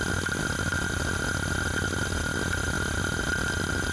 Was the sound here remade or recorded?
recorded